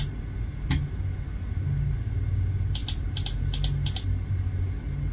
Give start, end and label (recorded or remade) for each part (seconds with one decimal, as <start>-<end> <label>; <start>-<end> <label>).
0.0-5.1 recorded